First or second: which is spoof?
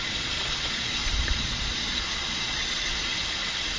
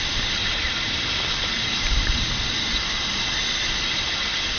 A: first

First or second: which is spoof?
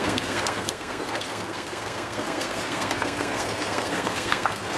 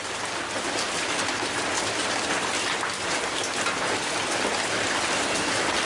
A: first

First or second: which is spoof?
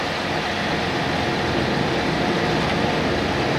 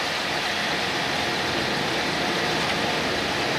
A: second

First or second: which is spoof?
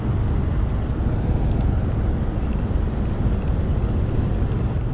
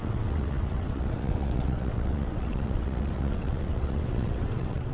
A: second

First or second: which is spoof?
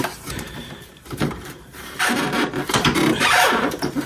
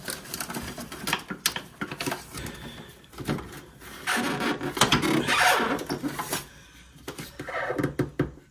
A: first